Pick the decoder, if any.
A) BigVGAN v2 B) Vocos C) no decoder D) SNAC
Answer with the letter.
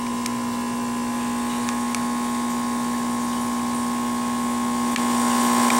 C